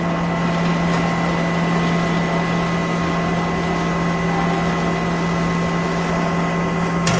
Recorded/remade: recorded